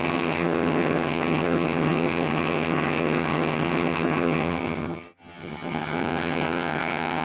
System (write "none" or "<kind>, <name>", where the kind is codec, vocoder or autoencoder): vocoder, HiFi-GAN